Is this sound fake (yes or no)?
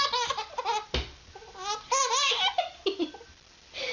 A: no